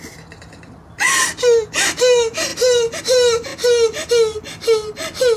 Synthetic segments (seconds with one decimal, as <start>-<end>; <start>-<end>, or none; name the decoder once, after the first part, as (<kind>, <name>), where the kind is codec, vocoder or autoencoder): none